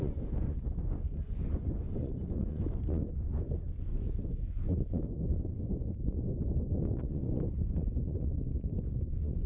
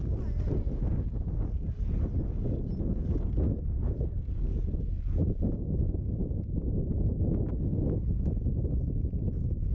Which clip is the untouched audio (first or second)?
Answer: second